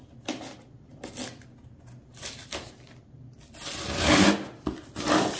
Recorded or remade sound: recorded